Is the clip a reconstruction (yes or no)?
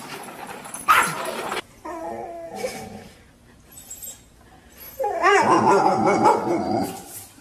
no